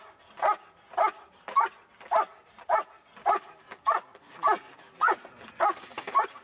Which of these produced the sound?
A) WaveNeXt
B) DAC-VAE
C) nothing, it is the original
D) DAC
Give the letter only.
C